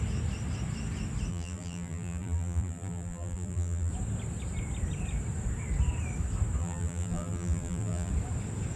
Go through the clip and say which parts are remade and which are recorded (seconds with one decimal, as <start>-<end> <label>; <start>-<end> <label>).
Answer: 0.0-1.3 recorded; 1.3-3.9 remade; 3.9-6.6 recorded; 6.6-8.1 remade; 8.1-8.8 recorded